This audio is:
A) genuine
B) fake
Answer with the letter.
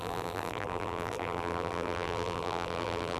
B